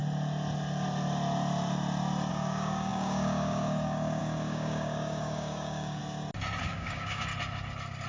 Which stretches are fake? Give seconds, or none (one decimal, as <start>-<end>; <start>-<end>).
2.3-6.0; 6.6-7.3